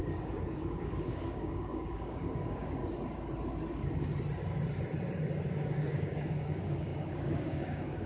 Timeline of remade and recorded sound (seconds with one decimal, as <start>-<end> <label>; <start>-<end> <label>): 0.0-2.8 remade; 2.8-5.5 recorded; 5.5-8.1 remade